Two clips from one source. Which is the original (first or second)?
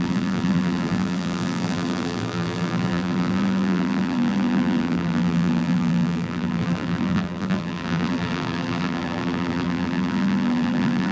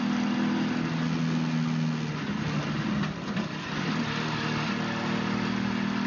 second